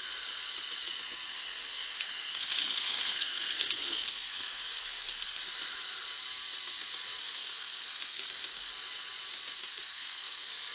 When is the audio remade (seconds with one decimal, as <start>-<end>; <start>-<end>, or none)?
1.3-5.4; 7.2-8.7; 9.6-10.7